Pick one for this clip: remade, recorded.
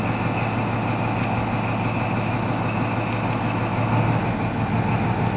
recorded